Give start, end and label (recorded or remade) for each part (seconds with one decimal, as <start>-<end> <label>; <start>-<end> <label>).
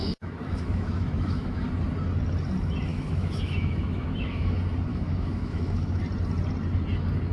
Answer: 0.0-1.6 remade; 1.6-2.9 recorded; 2.9-4.5 remade; 4.5-4.9 recorded; 4.9-6.0 remade; 6.0-7.3 recorded